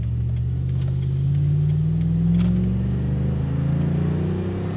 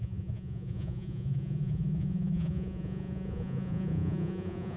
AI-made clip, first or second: second